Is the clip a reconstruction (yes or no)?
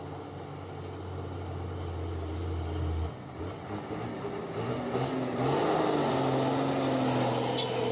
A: no